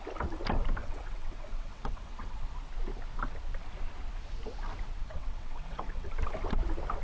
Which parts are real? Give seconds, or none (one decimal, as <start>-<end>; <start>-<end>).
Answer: 0.0-0.8; 2.5-5.0; 6.1-7.0